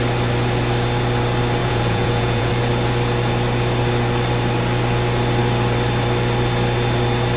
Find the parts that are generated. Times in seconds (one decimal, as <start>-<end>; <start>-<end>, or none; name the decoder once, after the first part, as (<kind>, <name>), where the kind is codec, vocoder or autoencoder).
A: 1.6-2.5 (vocoder, Vocos)

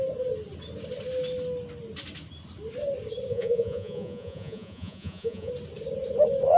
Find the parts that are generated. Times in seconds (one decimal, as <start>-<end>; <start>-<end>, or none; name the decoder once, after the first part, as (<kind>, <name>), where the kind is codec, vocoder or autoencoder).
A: 3.3-5.5 (vocoder, Vocos)

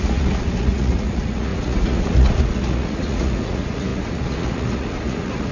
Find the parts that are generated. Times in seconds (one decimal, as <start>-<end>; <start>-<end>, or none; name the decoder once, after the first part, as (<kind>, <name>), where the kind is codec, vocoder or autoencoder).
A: 0.0-5.5 (vocoder, Vocos)

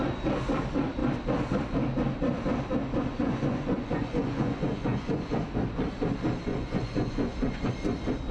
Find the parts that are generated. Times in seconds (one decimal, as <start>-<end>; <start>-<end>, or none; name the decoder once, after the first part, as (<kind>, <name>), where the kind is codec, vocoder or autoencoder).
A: 3.1-5.4 (vocoder, Vocos); 6.5-7.7

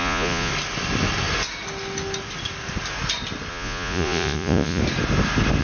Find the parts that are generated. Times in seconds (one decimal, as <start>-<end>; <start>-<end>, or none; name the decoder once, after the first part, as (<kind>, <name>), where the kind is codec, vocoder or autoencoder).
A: 0.0-0.5 (vocoder, Vocos); 3.5-4.8

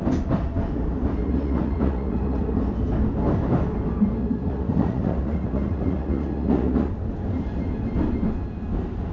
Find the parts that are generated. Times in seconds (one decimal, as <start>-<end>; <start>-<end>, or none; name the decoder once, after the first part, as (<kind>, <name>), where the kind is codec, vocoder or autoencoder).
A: 1.2-2.6 (vocoder, Vocos); 4.2-6.9